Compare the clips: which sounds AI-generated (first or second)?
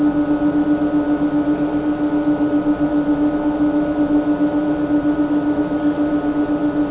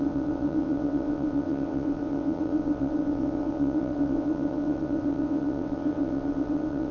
second